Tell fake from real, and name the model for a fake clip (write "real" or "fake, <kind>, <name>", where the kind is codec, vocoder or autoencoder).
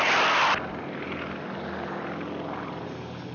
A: real